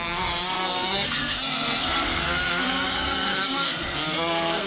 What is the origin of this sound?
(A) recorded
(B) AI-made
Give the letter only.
B